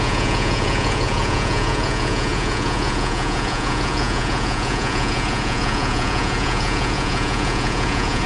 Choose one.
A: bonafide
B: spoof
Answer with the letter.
B